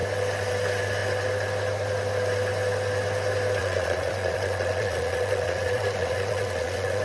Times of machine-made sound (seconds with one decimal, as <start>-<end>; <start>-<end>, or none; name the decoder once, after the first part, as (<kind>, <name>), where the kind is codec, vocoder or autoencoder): 3.6-7.0 (vocoder, Vocos)